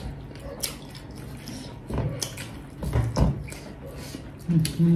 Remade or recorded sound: recorded